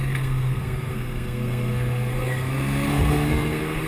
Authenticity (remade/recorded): remade